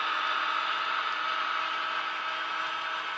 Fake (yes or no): no